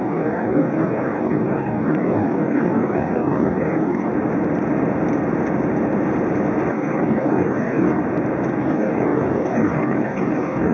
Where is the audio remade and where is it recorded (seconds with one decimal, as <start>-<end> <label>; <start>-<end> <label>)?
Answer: 0.0-4.1 remade; 4.1-6.7 recorded; 6.7-8.0 remade; 8.0-8.6 recorded; 8.6-10.7 remade